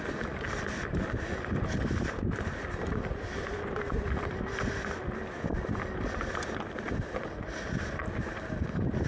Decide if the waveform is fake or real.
real